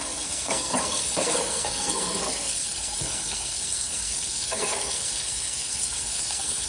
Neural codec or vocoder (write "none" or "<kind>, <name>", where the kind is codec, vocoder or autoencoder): codec, SNAC